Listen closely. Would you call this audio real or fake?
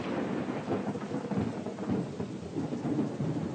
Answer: real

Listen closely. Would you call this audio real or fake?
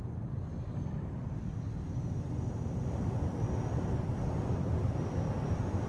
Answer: fake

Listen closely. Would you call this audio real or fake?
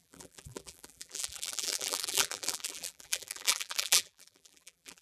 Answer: fake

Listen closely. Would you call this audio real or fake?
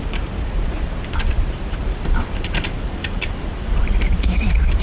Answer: fake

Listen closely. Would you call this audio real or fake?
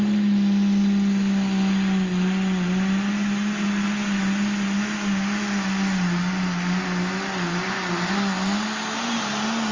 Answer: real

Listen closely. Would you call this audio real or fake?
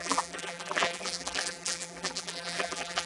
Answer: fake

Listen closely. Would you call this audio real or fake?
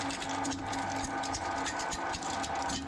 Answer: real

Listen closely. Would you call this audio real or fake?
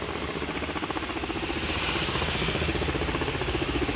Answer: real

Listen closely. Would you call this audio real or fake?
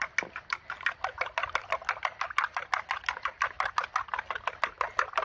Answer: real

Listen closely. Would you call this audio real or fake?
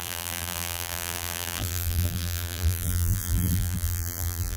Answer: fake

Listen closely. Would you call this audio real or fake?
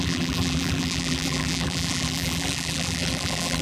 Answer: fake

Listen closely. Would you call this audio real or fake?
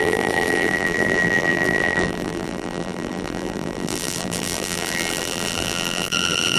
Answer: fake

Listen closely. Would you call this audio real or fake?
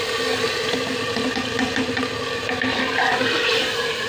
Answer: real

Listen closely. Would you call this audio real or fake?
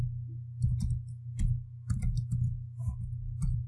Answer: real